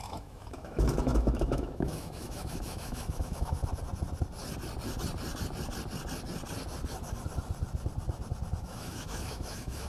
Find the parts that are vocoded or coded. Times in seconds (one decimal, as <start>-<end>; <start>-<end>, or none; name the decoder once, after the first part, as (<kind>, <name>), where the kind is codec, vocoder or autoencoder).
0.0-3.6 (autoencoder, DAC-VAE); 8.6-9.9